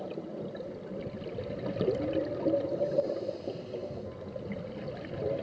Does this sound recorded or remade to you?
recorded